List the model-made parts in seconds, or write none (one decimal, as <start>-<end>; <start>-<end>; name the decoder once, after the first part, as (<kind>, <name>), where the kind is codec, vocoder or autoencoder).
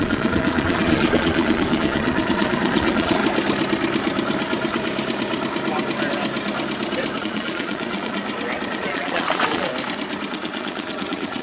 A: 0.0-3.2 (vocoder, Vocos); 7.2-8.2; 8.7-9.7; 10.3-11.4